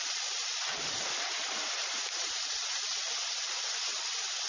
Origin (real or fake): real